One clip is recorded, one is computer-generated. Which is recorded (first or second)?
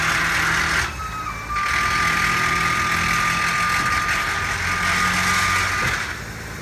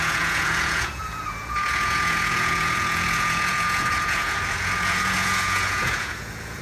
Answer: first